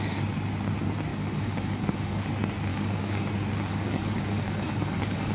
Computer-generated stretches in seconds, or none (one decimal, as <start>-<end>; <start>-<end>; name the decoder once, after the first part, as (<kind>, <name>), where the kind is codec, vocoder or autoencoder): 1.1-2.2 (codec, DAC); 2.7-3.3; 3.7-5.3